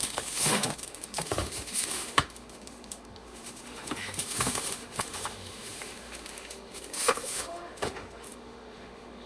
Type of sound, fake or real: fake